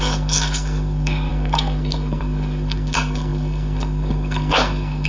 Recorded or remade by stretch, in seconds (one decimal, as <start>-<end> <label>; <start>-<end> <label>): 0.0-5.1 remade